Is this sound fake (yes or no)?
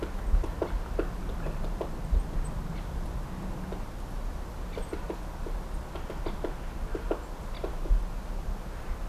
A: no